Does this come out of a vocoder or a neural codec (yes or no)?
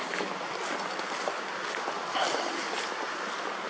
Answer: no